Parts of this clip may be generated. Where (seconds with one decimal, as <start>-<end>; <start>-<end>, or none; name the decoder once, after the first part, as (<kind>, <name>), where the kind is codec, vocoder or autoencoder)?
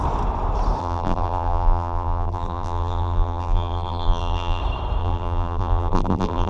0.8-4.6 (vocoder, BigVGAN v2); 5.0-6.5